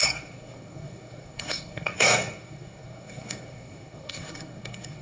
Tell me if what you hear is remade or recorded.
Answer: remade